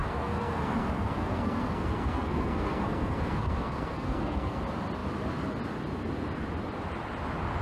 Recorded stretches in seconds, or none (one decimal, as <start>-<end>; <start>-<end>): 4.6-7.6